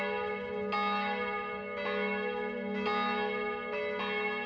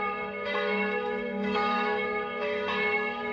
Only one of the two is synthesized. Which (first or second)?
second